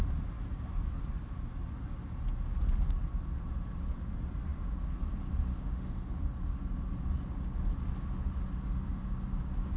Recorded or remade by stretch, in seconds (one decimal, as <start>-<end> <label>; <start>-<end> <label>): 0.0-5.5 recorded; 5.5-6.2 remade; 6.2-9.8 recorded